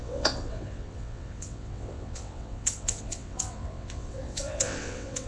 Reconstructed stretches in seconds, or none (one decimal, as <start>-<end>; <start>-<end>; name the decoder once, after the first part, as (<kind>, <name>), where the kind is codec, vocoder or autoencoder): 0.0-5.3 (vocoder, WaveNeXt)